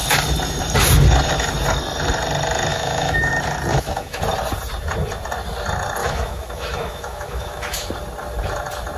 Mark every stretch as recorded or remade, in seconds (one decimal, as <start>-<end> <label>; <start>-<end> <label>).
0.0-2.7 recorded; 2.7-3.3 remade; 3.3-3.7 recorded; 3.7-4.2 remade; 4.2-6.0 recorded; 6.0-7.9 remade; 7.9-9.0 recorded